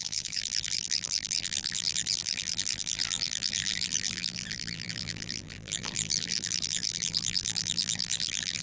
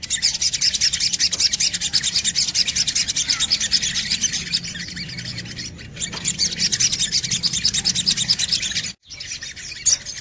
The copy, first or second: first